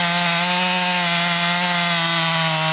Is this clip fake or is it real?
real